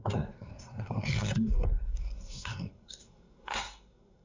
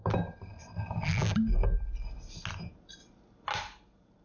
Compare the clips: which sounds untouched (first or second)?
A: second